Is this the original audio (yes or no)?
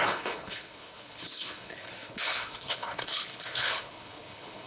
no